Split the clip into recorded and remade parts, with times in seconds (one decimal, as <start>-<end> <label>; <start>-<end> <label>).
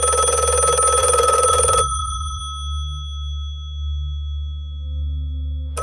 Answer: 0.0-1.0 recorded; 1.0-2.4 remade; 2.4-5.8 recorded